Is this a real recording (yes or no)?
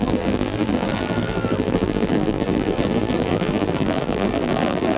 no